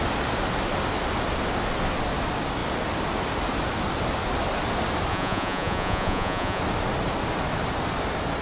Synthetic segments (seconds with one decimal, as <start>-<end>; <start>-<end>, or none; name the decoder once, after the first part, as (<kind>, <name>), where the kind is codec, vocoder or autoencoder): 5.1-6.6 (vocoder, Vocos)